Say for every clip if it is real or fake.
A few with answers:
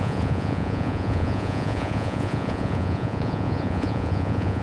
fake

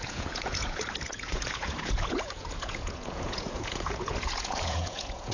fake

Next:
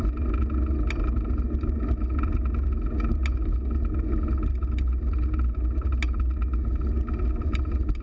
real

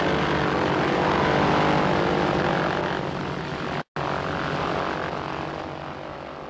real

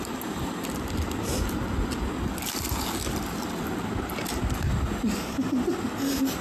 real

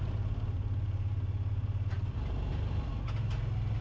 real